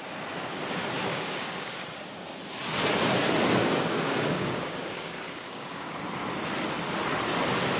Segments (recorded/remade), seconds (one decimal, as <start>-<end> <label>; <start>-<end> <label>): 0.0-1.1 recorded; 1.1-1.7 remade; 1.7-3.6 recorded; 3.6-6.0 remade; 6.0-7.8 recorded

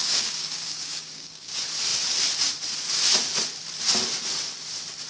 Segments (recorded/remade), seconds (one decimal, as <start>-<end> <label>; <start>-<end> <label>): 0.0-1.5 remade; 1.5-5.1 recorded

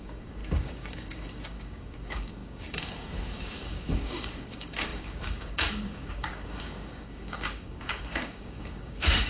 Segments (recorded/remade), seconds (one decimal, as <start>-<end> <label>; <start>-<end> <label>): 0.0-9.3 remade